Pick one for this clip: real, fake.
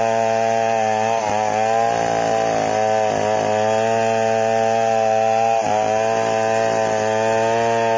real